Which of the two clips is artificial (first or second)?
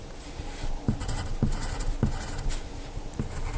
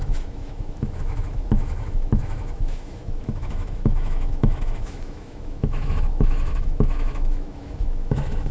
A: second